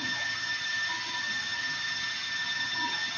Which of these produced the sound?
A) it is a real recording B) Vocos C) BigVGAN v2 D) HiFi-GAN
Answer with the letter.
D